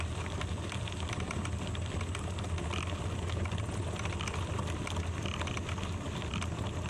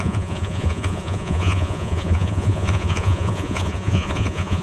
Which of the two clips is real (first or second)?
first